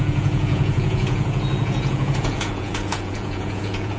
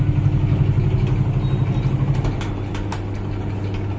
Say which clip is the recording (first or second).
second